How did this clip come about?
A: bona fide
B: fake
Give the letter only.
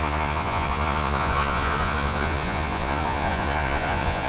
B